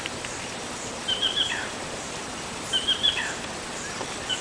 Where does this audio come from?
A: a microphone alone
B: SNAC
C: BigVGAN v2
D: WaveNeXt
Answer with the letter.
C